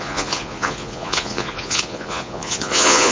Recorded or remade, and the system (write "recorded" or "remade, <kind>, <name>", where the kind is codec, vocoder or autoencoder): remade, vocoder, Vocos